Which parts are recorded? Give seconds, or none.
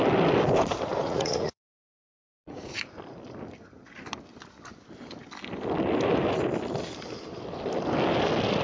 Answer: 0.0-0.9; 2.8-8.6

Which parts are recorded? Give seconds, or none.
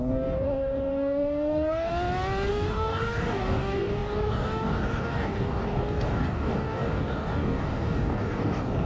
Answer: 1.9-2.5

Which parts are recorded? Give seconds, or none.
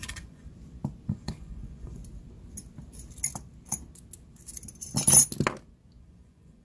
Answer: 0.5-1.1; 2.0-6.0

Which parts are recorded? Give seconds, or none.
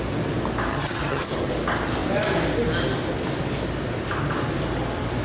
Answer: 0.0-0.7; 1.5-5.2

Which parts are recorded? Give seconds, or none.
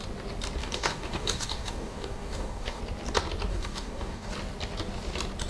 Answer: 0.0-0.6; 2.8-3.5; 4.3-5.5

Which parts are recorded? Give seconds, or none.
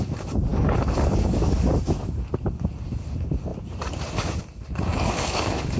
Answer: 0.0-0.5; 1.7-4.9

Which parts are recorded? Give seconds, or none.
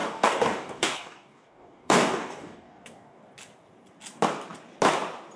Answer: 3.2-5.4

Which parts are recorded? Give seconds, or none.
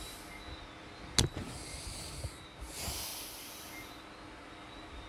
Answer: 0.0-5.1